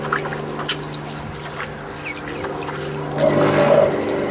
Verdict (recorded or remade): recorded